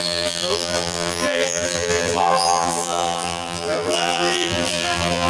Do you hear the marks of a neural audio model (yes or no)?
yes